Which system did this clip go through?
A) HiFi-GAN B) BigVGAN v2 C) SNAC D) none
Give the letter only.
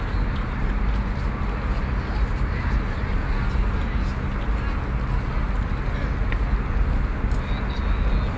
D